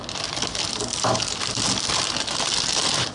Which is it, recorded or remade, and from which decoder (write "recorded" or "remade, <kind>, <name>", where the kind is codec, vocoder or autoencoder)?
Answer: recorded